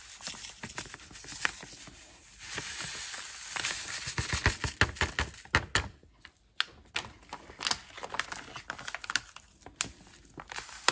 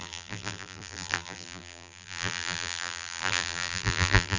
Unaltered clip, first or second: first